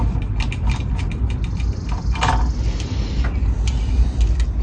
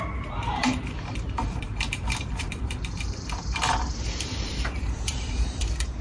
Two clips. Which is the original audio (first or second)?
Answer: first